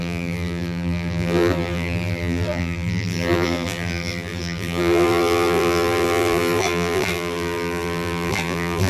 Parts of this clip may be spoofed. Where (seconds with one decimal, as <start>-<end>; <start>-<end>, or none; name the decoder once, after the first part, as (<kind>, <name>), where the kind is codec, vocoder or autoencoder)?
0.0-8.9 (vocoder, BigVGAN v2)